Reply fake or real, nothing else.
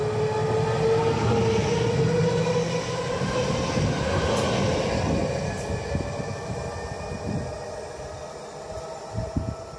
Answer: real